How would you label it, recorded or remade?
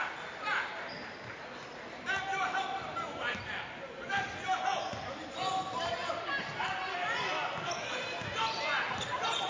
recorded